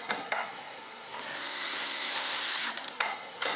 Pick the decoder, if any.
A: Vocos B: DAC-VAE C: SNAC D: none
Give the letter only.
C